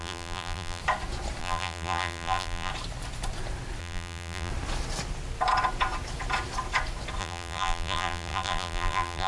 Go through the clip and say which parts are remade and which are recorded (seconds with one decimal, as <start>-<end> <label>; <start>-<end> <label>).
0.0-0.8 remade; 0.8-1.4 recorded; 1.4-2.7 remade; 2.7-3.8 recorded; 3.8-4.5 remade; 4.5-7.2 recorded; 7.2-9.3 remade